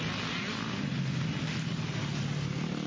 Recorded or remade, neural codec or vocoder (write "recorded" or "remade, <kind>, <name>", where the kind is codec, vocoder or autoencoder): recorded